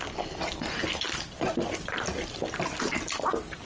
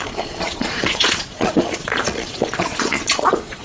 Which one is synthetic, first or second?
second